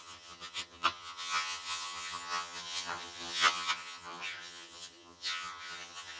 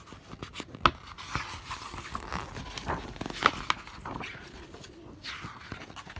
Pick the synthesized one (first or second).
first